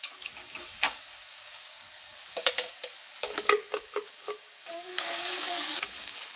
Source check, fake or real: fake